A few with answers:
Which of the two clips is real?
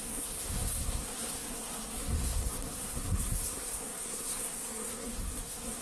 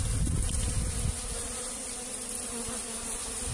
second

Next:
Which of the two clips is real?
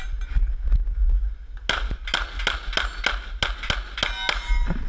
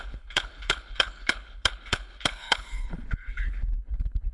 first